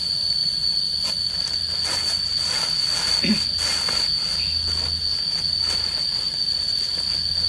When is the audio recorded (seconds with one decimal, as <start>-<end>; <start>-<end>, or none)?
0.0-0.4; 1.1-7.5